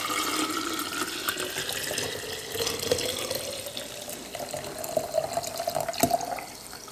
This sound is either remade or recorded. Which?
recorded